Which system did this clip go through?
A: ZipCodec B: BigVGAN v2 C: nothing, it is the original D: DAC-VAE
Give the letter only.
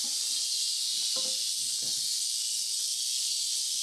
C